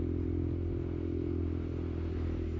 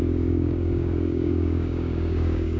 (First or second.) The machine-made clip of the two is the second